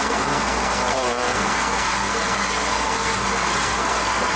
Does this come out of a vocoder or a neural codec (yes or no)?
yes